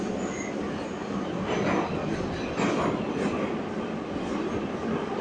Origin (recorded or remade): recorded